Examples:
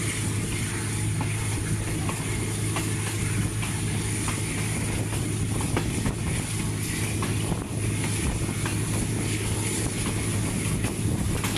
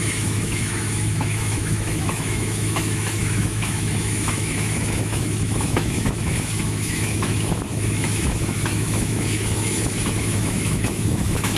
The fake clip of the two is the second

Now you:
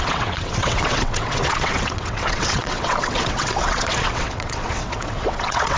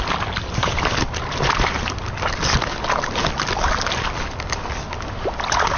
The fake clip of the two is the first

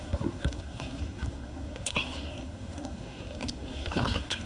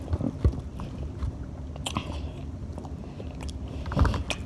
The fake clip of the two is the first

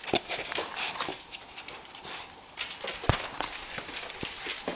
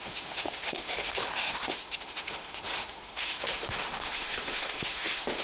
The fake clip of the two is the second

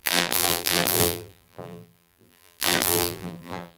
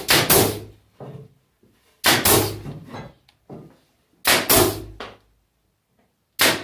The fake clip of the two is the first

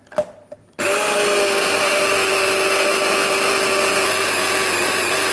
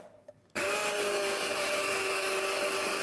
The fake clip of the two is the second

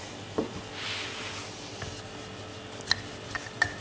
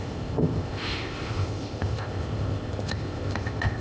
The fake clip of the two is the second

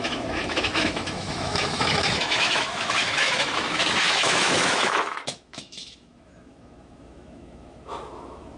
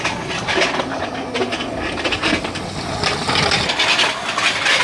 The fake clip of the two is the first